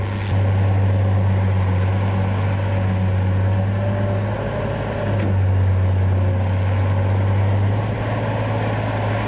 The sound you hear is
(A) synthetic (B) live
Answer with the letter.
B